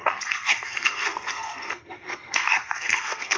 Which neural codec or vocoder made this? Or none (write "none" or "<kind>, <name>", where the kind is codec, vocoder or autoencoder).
codec, SNAC